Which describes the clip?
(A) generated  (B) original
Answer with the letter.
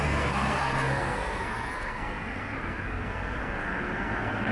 A